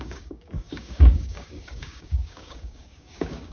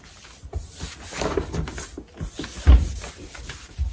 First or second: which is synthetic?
first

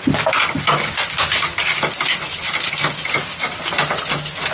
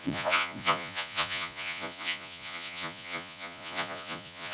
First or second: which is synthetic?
second